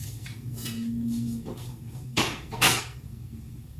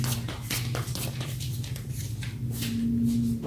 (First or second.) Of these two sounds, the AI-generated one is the first